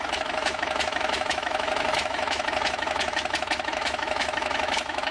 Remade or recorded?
remade